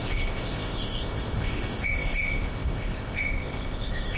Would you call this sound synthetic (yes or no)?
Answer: yes